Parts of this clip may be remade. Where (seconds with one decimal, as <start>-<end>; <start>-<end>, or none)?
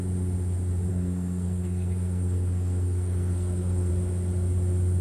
0.9-3.9